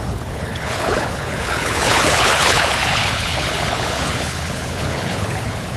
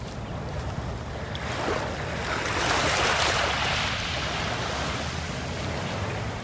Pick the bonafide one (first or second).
second